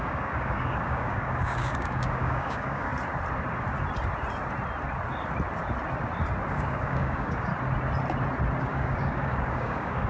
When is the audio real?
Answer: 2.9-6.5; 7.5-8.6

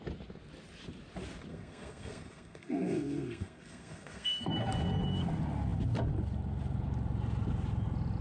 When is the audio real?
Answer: 0.0-1.5; 4.5-8.2

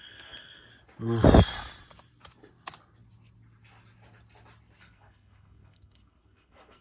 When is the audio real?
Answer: 0.7-4.8

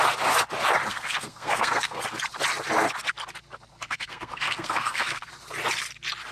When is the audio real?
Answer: 0.0-0.9; 2.0-3.7; 5.3-6.3

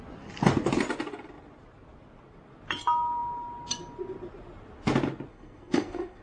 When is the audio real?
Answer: 0.0-5.3

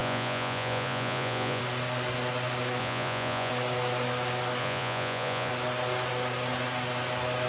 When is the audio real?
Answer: 1.6-2.8; 3.5-4.6; 5.5-7.5

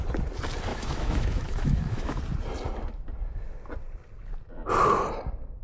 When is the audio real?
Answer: 0.0-0.7; 2.2-5.6